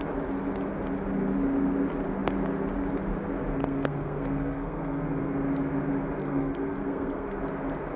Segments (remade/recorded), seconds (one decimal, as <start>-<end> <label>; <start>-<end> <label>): 0.0-3.6 recorded; 3.6-5.3 remade; 5.3-6.2 recorded; 6.2-7.4 remade; 7.4-8.0 recorded